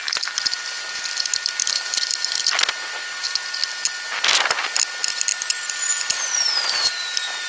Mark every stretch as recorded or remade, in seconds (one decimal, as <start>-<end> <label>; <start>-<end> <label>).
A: 0.0-1.0 remade; 1.0-1.6 recorded; 1.6-2.6 remade; 2.6-5.3 recorded; 5.3-6.9 remade; 6.9-7.5 recorded